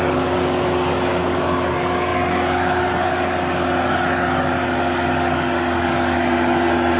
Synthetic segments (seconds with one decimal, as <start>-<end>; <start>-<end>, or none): 0.0-7.0